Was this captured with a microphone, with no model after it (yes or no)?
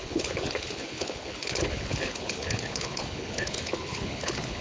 no